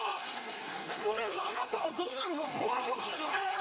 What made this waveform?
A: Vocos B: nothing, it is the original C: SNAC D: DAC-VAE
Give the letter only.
C